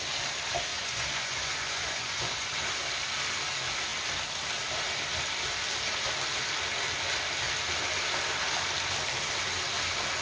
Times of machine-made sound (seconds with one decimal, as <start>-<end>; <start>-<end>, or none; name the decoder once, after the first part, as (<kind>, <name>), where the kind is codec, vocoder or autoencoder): 0.7-2.5 (vocoder, Vocos)